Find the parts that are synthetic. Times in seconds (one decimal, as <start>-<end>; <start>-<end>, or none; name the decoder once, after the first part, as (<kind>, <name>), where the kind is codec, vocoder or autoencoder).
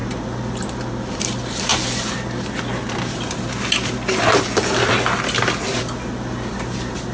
none